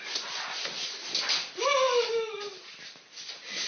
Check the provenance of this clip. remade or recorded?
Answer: recorded